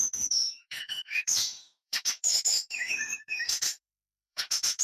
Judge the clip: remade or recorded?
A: remade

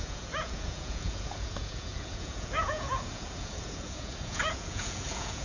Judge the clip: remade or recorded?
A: remade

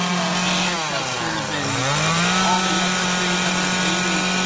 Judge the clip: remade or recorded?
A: recorded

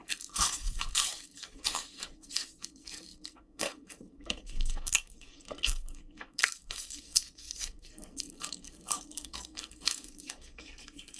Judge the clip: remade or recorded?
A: remade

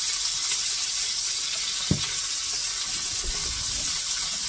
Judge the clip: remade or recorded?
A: recorded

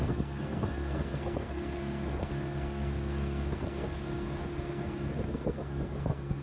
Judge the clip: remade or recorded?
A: remade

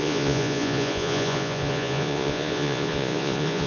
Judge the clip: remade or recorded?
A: remade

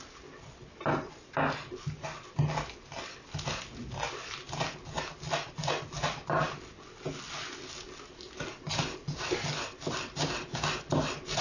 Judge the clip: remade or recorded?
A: recorded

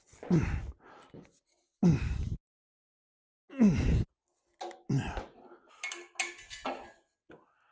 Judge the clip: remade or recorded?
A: recorded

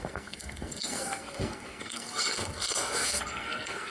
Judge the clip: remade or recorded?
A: remade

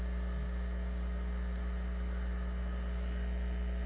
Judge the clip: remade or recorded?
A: recorded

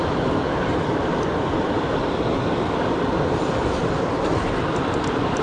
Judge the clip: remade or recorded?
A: recorded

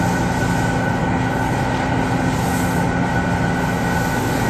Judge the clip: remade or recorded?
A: recorded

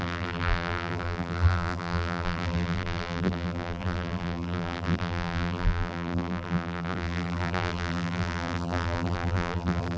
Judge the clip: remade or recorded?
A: remade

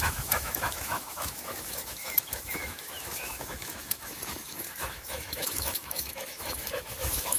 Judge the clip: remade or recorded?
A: remade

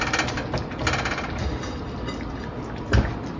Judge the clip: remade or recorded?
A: recorded